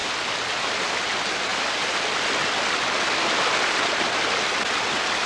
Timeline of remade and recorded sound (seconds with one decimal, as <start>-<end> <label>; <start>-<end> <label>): 0.0-5.3 recorded